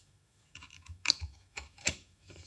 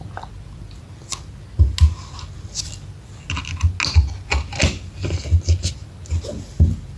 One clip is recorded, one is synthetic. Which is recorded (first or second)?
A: second